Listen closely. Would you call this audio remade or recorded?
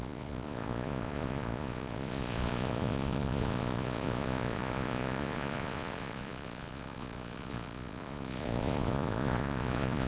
remade